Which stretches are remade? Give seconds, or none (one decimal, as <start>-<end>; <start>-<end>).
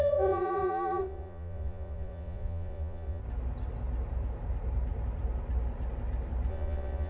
0.0-3.2; 6.5-7.1